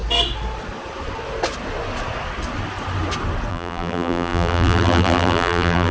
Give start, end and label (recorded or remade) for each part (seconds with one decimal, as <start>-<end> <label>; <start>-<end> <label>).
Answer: 0.0-3.5 recorded; 3.5-5.9 remade